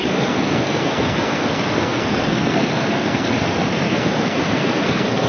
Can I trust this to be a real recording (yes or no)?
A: no